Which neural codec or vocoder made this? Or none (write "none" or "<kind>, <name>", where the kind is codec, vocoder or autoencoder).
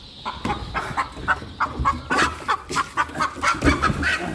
none